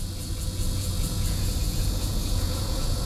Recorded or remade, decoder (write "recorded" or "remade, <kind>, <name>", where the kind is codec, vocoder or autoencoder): remade, vocoder, Vocos